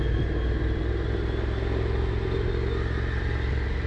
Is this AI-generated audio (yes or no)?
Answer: no